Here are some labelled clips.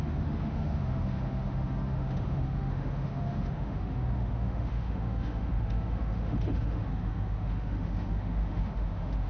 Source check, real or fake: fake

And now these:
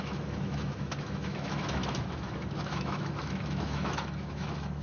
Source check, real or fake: fake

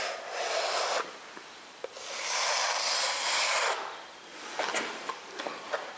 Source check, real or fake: real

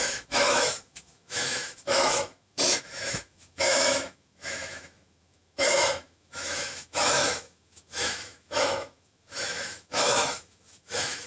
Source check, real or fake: fake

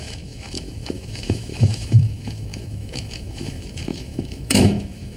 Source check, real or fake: fake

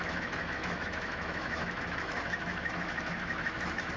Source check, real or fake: fake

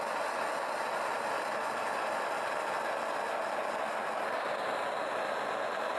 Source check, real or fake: real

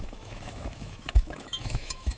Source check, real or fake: fake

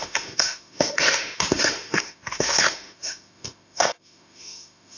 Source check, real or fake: fake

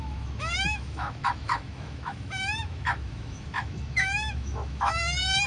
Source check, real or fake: fake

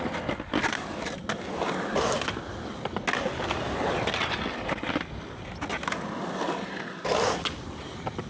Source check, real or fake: real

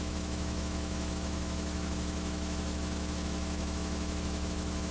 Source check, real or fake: fake